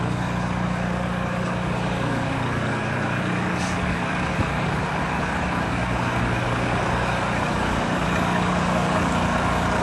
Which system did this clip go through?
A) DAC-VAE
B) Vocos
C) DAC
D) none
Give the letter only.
C